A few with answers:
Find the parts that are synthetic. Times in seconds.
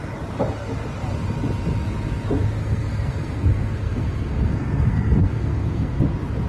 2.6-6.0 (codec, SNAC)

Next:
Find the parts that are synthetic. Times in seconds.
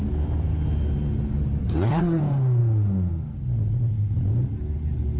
1.6-2.2 (codec, SNAC)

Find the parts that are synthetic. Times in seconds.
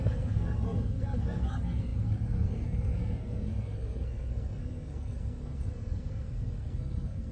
0.0-7.3 (codec, SNAC)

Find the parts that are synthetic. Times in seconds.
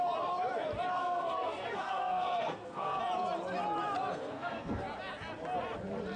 1.0-3.0 (codec, SNAC); 4.1-4.8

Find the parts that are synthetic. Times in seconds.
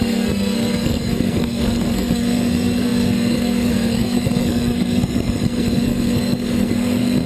0.0-7.3 (codec, SNAC)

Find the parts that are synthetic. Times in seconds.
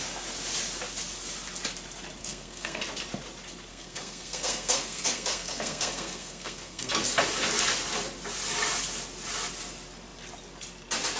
2.2-2.8 (codec, SNAC); 3.7-6.9